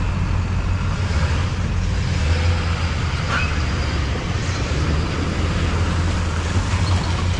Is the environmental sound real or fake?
real